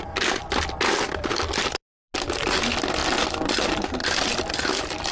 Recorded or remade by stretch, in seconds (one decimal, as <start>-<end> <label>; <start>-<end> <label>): 0.0-5.1 recorded